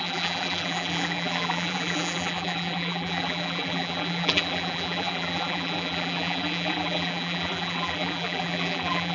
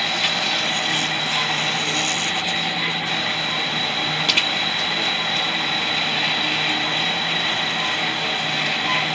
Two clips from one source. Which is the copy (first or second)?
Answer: first